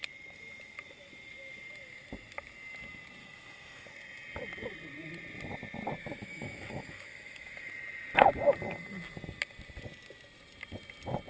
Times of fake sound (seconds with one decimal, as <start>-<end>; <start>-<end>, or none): 3.2-3.9; 6.0-7.7